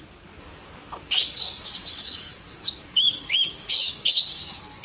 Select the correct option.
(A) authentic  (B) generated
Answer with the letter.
B